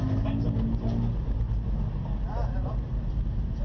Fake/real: real